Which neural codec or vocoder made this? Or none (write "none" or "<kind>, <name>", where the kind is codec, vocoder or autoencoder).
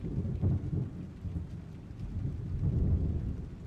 none